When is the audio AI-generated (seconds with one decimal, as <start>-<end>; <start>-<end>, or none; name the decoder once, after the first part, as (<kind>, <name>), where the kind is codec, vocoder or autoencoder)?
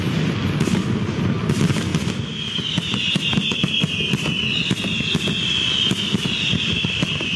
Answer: none